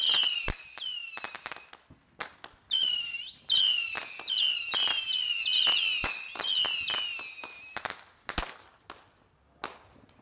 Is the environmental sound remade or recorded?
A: recorded